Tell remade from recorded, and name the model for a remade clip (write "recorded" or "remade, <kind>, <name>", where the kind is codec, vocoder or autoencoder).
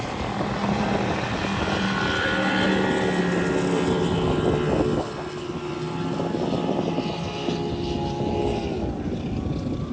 recorded